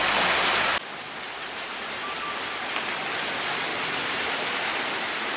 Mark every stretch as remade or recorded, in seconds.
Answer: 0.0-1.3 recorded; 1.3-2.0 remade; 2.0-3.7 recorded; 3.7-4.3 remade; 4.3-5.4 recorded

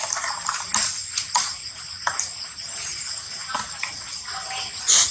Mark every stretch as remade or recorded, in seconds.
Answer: 0.0-5.1 recorded

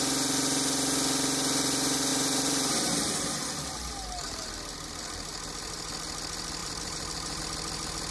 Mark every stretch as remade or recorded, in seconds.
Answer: 0.0-2.1 recorded; 2.1-4.5 remade; 4.5-6.6 recorded; 6.6-7.4 remade; 7.4-8.1 recorded

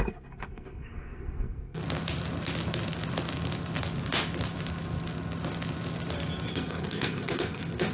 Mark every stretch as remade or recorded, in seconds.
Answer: 0.0-1.8 remade; 1.8-6.5 recorded; 6.5-7.9 remade

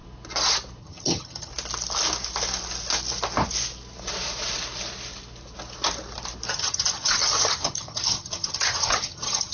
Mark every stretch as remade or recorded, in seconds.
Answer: 0.0-0.8 recorded; 0.8-1.5 remade; 1.5-6.5 recorded; 6.5-9.5 remade

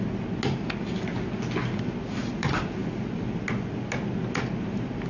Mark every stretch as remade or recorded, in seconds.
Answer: 0.0-5.1 recorded

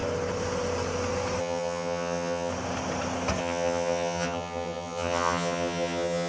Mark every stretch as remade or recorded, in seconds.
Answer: 0.0-1.4 recorded; 1.4-2.5 remade; 2.5-3.4 recorded; 3.4-6.3 remade